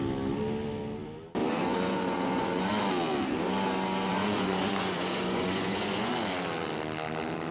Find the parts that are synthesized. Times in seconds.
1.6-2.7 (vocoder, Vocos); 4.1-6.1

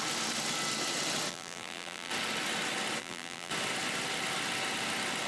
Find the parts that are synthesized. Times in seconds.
1.3-2.1 (vocoder, BigVGAN v2); 3.0-3.5